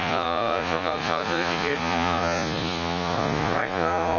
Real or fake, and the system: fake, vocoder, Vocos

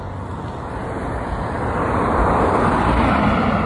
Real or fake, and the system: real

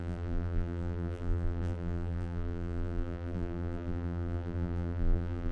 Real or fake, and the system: fake, vocoder, BigVGAN v2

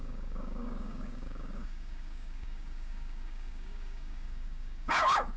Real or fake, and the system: fake, codec, DAC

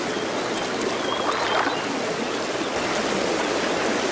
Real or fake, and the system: real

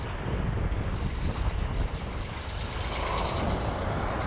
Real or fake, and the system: real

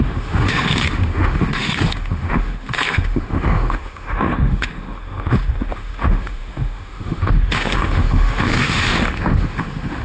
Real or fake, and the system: fake, autoencoder, DAC-VAE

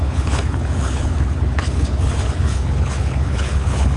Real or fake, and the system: fake, codec, HILCodec